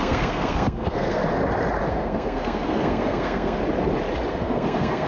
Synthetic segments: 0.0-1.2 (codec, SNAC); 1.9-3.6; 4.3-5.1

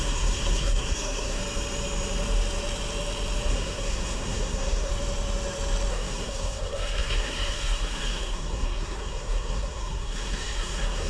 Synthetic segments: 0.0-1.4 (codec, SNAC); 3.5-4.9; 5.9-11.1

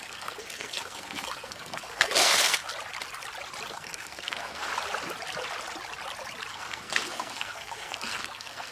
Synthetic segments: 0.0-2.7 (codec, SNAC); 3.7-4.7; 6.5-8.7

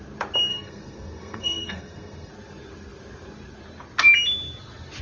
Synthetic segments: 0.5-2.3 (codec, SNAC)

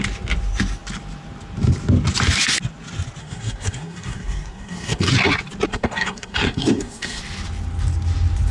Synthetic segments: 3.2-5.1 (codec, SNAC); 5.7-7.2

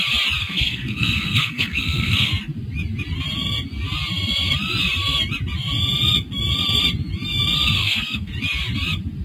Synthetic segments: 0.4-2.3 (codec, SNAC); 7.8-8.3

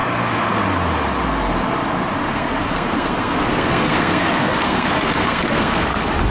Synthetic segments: 2.3-5.8 (codec, SNAC)

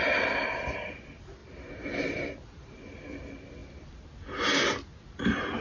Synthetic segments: none